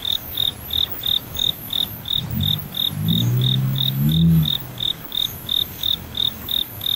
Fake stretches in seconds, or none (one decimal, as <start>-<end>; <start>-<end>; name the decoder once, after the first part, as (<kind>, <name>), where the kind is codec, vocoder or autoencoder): 0.0-0.5 (codec, DAC); 1.2-2.2; 3.1-7.0